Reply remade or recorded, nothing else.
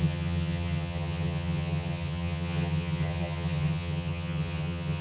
remade